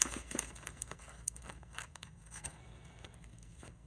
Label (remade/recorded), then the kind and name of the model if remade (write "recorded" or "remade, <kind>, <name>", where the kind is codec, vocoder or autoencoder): remade, codec, SNAC